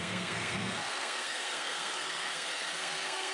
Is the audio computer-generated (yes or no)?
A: yes